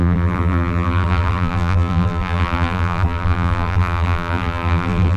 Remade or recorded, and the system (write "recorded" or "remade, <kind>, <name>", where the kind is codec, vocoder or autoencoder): remade, vocoder, BigVGAN v2